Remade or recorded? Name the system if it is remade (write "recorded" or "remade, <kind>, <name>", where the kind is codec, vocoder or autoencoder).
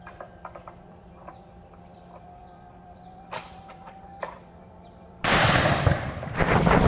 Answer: remade, vocoder, BigVGAN v2